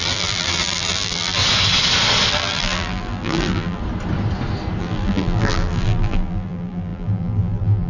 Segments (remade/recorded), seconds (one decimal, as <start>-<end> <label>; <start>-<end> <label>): 0.0-1.4 remade; 1.4-2.3 recorded; 2.3-3.8 remade; 3.8-4.8 recorded; 4.8-7.9 remade

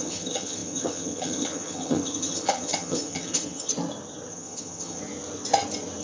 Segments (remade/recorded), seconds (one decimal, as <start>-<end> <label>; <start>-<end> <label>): 0.0-3.7 remade; 3.7-4.3 recorded; 4.3-5.0 remade; 5.0-6.0 recorded

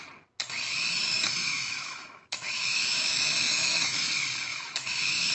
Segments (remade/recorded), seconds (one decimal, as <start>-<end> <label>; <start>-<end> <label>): 0.0-0.9 recorded; 0.9-4.1 remade; 4.1-4.5 recorded; 4.5-5.3 remade

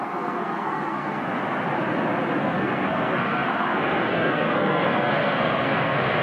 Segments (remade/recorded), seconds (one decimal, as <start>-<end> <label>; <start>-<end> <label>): 0.0-1.4 remade; 1.4-2.4 recorded; 2.4-6.2 remade

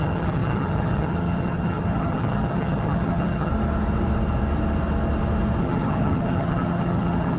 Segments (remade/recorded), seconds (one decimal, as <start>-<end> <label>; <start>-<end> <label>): 0.0-3.5 remade; 3.5-5.6 recorded; 5.6-7.4 remade

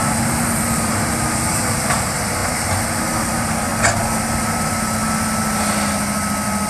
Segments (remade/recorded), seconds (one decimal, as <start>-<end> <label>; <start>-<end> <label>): 0.0-2.4 remade; 2.4-3.2 recorded; 3.2-3.7 remade; 3.7-4.2 recorded; 4.2-5.0 remade; 5.0-6.7 recorded

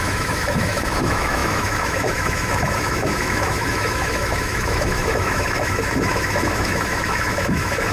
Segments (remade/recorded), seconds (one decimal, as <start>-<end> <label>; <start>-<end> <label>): 0.0-7.9 remade